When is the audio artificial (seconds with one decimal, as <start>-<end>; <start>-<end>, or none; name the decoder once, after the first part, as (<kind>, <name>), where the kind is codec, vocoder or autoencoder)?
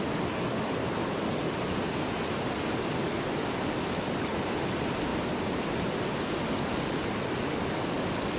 5.1-6.1 (vocoder, BigVGAN v2)